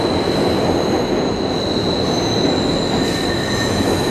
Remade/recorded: recorded